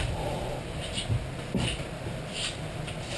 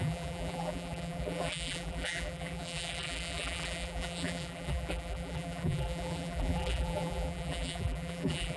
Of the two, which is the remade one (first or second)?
second